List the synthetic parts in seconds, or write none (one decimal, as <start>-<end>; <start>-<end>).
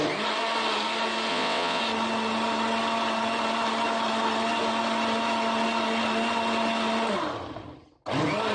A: 1.3-1.8